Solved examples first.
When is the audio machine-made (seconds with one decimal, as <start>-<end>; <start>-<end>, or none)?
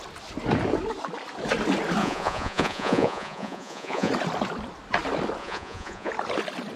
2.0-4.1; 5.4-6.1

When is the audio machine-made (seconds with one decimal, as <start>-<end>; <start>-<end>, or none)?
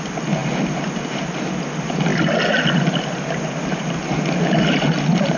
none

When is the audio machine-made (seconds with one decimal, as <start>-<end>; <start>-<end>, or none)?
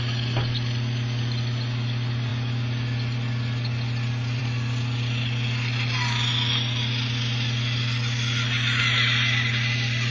none